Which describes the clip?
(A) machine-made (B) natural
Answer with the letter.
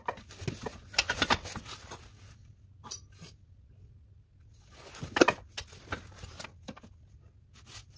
B